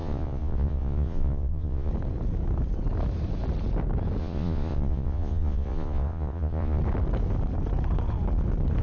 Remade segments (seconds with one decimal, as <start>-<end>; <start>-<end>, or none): 0.0-1.9; 4.2-6.8